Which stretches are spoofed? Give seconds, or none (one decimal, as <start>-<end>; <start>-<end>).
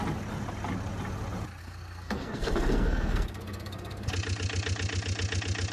1.6-4.1